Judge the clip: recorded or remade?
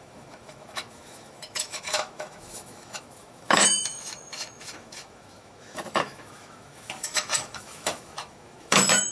remade